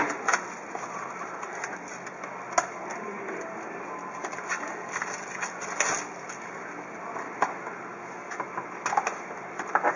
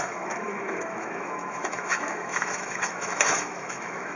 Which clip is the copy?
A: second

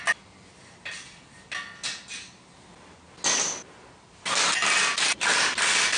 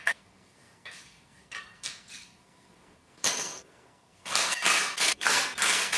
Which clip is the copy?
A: second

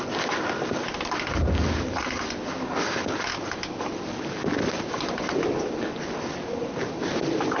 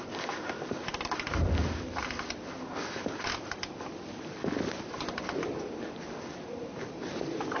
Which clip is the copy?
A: second